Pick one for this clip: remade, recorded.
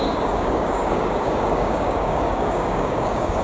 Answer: remade